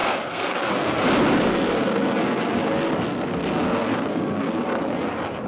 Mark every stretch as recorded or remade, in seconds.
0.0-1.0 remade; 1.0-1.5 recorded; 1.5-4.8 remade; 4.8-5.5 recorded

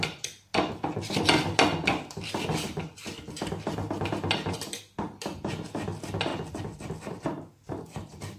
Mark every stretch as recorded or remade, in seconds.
0.0-7.6 recorded; 7.6-8.4 remade